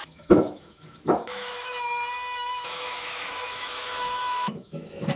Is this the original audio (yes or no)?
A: no